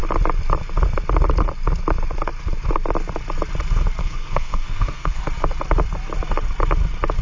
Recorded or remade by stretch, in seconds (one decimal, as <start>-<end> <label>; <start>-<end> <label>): 0.0-4.0 recorded; 4.0-5.2 remade; 5.2-7.2 recorded